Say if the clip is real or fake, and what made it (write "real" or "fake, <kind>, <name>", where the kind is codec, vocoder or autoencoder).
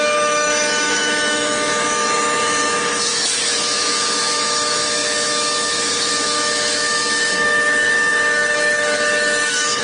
fake, autoencoder, DAC-VAE